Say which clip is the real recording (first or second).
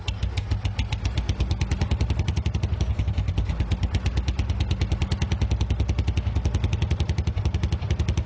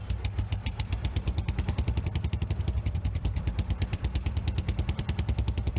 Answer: first